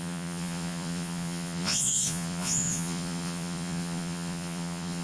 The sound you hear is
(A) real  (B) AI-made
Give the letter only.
B